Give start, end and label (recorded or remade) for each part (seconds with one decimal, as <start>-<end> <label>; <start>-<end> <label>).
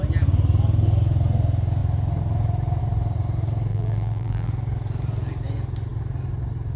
0.0-3.7 recorded; 3.7-4.5 remade; 4.5-6.8 recorded